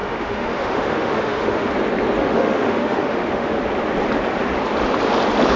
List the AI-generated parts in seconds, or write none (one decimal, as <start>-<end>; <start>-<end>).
0.0-1.7; 2.2-3.6